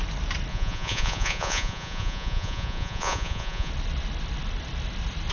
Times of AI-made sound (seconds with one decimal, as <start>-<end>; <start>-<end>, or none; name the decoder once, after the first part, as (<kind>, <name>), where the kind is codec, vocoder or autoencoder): 0.5-3.7 (vocoder, Vocos)